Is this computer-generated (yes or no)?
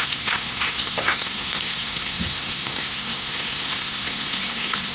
yes